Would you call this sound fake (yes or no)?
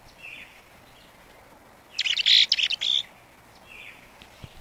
no